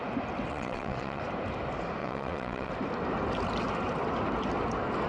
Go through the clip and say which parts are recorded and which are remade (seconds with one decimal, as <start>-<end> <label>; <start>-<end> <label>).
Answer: 0.0-0.5 recorded; 0.5-1.2 remade; 1.2-2.0 recorded; 2.0-2.7 remade; 2.7-5.1 recorded